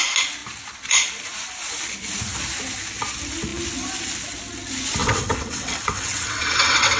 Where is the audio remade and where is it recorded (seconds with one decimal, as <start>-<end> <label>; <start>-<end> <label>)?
0.0-5.0 recorded; 5.0-7.0 remade